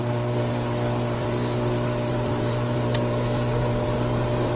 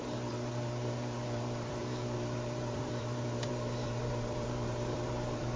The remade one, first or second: second